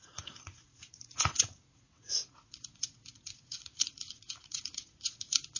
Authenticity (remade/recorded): remade